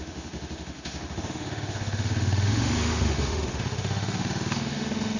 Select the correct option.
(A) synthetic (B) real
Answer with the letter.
A